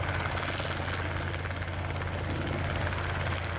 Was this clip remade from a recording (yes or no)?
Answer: no